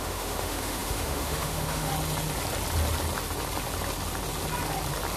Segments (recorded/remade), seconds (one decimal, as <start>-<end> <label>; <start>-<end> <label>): 0.0-1.9 remade; 1.9-5.2 recorded